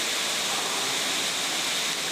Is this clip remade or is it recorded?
recorded